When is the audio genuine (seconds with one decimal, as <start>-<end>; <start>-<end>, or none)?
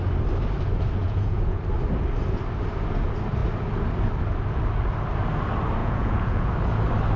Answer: 0.0-1.0; 1.6-5.8; 6.5-7.2